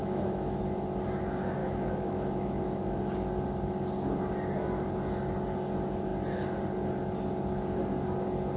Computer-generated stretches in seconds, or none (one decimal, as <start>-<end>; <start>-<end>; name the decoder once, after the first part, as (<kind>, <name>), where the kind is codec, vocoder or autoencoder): 0.0-0.6 (autoencoder, DAC-VAE); 1.6-3.0